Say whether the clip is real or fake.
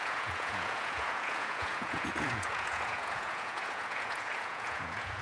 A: fake